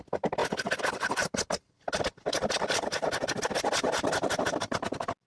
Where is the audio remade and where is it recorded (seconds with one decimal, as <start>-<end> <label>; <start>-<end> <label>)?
0.0-5.3 recorded